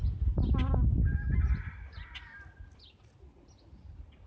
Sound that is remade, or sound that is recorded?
recorded